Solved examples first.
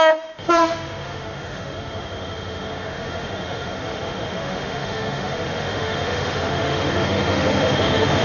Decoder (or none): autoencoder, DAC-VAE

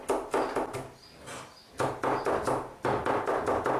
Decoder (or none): none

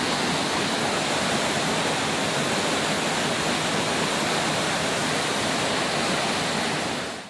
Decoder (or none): none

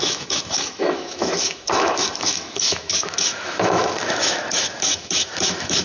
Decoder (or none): autoencoder, DAC-VAE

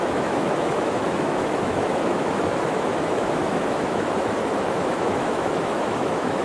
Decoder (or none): autoencoder, DAC-VAE